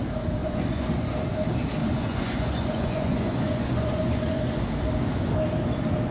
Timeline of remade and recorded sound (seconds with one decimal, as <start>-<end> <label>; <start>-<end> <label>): 0.0-0.4 recorded; 0.4-1.1 remade; 1.1-1.8 recorded; 1.8-4.6 remade; 4.6-6.1 recorded